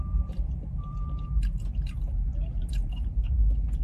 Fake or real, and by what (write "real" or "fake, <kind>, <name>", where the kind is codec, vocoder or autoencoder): fake, vocoder, BigVGAN v2